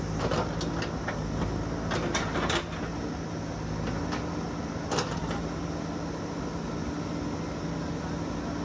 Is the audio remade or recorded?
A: recorded